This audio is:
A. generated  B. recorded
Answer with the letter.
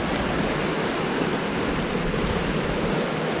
B